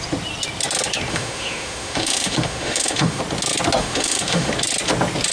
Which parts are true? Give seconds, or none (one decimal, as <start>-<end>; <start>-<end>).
0.0-1.1; 3.2-3.8; 4.5-5.3